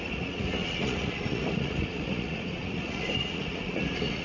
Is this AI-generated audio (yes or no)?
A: yes